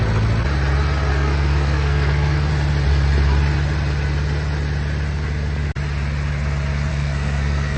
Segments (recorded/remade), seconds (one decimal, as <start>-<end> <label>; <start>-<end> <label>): 0.0-1.1 recorded; 1.1-2.5 remade; 2.5-6.9 recorded; 6.9-7.8 remade